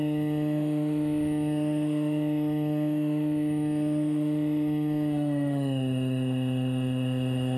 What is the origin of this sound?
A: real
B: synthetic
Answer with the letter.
B